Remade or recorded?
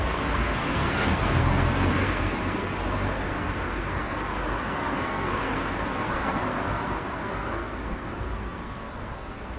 remade